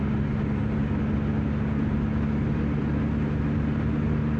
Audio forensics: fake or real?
real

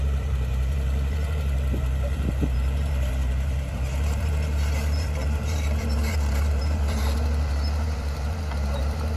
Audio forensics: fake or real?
fake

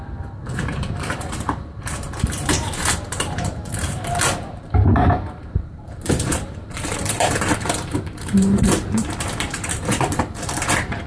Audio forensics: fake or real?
fake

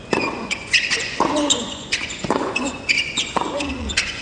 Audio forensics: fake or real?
fake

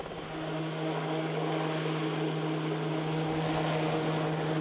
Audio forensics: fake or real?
real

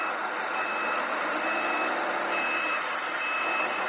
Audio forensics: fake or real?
real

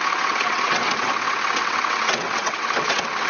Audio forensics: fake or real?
fake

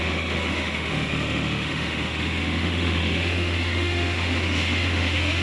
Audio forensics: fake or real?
fake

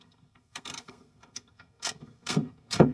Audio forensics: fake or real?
fake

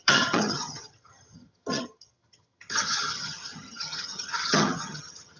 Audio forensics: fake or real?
fake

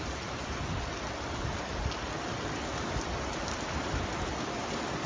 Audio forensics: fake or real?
fake